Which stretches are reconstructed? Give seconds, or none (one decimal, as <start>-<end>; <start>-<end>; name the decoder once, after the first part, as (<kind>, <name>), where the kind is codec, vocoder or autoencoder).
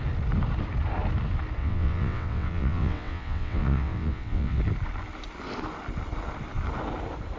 1.6-4.6 (vocoder, WaveNeXt)